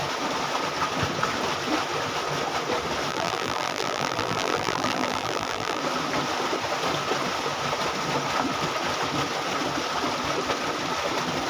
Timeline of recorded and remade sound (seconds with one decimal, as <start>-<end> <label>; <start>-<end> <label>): 0.0-3.1 recorded; 3.1-5.8 remade; 5.8-11.5 recorded